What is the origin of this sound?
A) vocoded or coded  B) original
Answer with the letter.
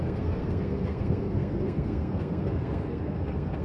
A